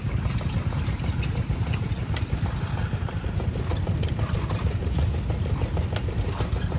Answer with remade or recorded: recorded